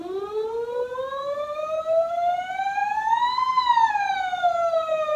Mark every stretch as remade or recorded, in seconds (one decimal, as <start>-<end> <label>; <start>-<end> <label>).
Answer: 0.0-5.2 recorded